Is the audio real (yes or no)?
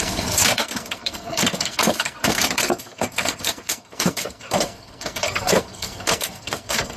no